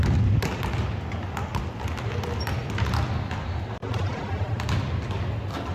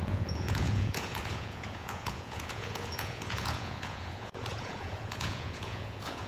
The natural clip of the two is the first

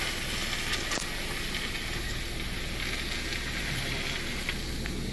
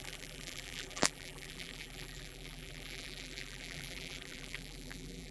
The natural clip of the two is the first